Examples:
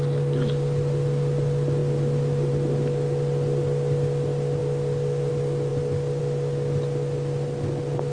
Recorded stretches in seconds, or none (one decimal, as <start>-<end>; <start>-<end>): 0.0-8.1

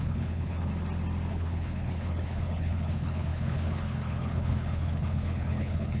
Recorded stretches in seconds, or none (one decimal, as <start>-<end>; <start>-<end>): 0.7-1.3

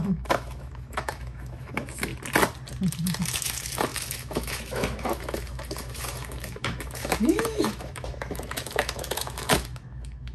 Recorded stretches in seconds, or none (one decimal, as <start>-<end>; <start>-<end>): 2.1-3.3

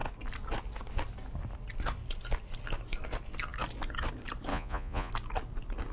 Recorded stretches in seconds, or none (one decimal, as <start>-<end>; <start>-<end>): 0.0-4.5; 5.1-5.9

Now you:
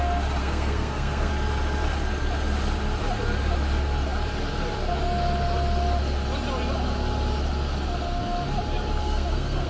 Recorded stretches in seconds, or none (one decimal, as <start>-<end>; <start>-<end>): 0.0-0.4; 1.3-9.0